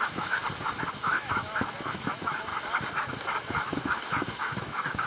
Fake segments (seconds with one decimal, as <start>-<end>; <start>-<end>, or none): 0.0-0.4; 1.0-2.5; 3.4-5.1